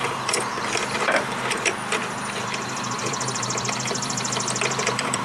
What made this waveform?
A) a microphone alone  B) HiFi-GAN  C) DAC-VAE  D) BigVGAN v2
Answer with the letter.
D